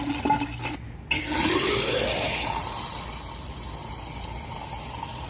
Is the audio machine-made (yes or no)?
no